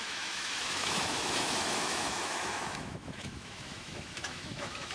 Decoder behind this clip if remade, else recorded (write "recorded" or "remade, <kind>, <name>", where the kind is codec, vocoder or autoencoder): remade, autoencoder, DAC-VAE